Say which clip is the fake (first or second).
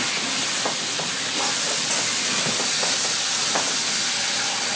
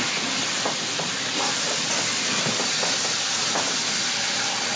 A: second